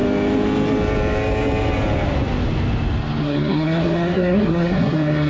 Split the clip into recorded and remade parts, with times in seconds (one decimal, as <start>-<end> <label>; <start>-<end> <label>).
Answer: 0.0-3.2 recorded; 3.2-5.3 remade